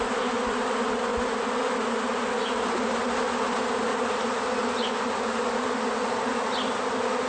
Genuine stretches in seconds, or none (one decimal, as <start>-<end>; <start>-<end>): 0.0-7.3